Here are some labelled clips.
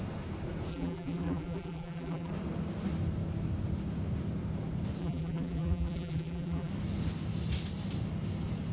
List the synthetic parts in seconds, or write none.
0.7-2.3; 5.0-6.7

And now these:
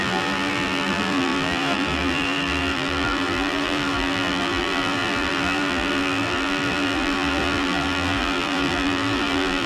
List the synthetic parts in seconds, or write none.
0.0-9.7

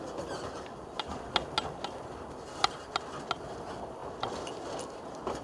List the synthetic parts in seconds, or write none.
none

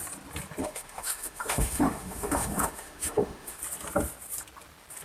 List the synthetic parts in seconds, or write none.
0.6-3.6

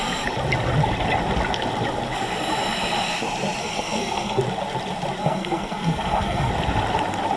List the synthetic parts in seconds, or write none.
3.6-4.4; 5.2-6.5